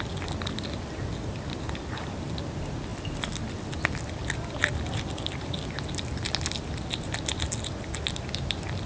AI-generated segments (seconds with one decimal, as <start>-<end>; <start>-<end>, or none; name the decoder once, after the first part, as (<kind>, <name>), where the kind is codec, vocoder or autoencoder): none